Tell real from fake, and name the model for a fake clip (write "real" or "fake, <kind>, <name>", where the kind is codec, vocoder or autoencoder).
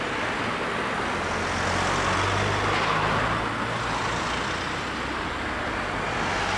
real